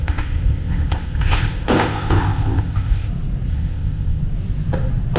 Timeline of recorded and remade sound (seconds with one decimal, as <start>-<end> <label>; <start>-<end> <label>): 0.0-3.1 remade; 3.1-3.5 recorded; 3.5-4.2 remade; 4.2-5.2 recorded